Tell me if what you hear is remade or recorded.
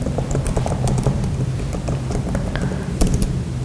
remade